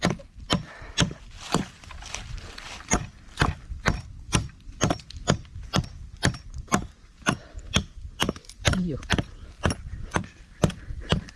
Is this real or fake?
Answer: fake